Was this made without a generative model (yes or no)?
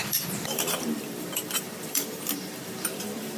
no